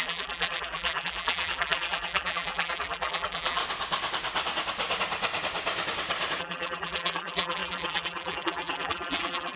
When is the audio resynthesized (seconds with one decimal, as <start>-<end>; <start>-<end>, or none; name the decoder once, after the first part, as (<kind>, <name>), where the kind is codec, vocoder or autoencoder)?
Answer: 0.0-3.6 (vocoder, BigVGAN v2); 6.4-9.6